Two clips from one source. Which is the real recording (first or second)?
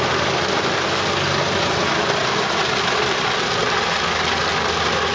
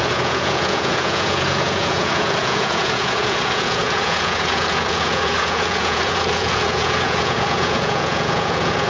first